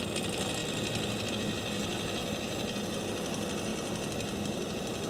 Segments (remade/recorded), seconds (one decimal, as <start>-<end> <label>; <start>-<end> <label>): 0.0-3.7 recorded; 3.7-5.1 remade